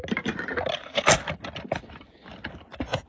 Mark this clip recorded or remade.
recorded